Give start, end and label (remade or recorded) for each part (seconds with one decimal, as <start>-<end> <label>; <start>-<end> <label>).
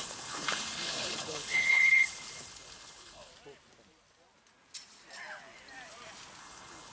0.0-3.3 remade; 3.3-6.4 recorded; 6.4-6.9 remade